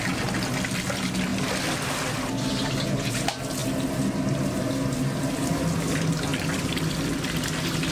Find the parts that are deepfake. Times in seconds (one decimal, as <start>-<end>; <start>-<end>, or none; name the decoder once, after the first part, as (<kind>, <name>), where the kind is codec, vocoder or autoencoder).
none